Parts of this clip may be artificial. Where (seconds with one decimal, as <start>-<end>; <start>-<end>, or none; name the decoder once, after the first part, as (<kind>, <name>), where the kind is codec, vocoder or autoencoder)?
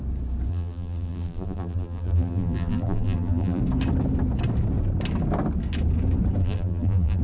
0.5-3.6 (vocoder, BigVGAN v2); 6.4-7.2